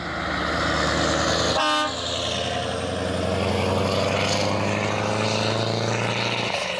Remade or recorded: recorded